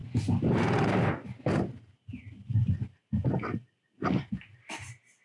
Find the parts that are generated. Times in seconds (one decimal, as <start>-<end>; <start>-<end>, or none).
none